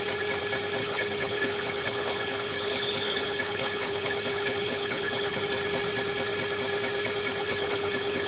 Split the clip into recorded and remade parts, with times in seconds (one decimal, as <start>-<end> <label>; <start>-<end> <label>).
0.0-0.8 recorded; 0.8-5.4 remade; 5.4-7.4 recorded; 7.4-8.3 remade